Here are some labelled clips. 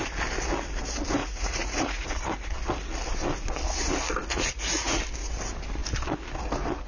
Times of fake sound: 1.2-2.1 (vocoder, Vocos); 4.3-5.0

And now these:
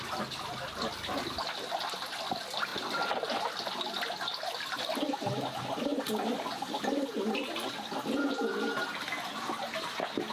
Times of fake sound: none

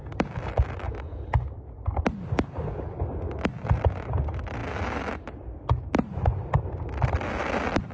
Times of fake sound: none